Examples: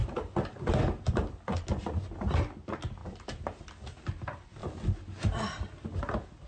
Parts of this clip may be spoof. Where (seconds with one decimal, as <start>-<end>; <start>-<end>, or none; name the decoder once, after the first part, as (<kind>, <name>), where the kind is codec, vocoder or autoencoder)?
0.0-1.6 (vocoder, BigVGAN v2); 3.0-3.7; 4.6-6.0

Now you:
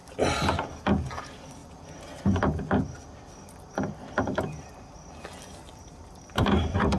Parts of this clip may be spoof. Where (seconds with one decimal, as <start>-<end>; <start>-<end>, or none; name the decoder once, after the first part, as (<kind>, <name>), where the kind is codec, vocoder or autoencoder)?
1.2-1.6 (vocoder, BigVGAN v2); 5.8-7.0

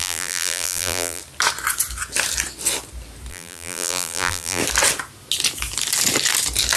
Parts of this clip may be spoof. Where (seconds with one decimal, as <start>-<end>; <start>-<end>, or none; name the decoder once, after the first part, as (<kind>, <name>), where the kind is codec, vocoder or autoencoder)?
0.0-1.2 (vocoder, BigVGAN v2); 3.3-4.6